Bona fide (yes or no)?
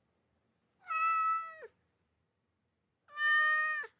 yes